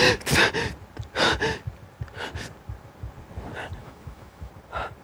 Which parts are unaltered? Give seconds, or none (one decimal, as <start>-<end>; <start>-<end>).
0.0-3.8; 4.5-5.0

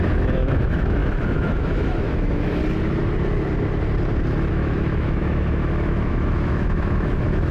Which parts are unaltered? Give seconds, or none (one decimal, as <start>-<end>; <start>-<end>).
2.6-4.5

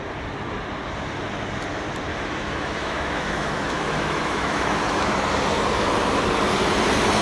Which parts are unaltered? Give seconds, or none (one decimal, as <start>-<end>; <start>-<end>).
0.0-2.1; 5.2-7.2

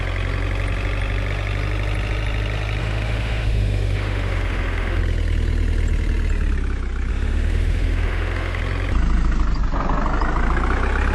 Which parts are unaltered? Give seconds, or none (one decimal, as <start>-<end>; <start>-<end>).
0.0-2.8; 5.0-7.1; 8.6-11.1

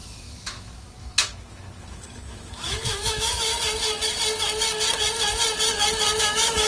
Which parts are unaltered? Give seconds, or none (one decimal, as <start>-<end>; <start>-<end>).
3.5-6.2

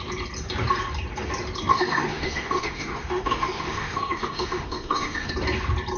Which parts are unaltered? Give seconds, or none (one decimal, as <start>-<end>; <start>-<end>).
0.0-1.7; 5.3-6.0

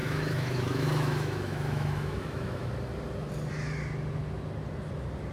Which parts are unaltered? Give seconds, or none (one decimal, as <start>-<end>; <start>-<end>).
2.7-5.3